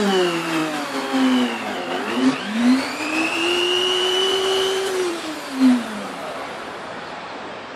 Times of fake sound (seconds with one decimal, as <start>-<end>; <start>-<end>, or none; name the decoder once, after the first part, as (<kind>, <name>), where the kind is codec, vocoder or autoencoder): 0.0-0.6 (vocoder, BigVGAN v2); 2.4-7.8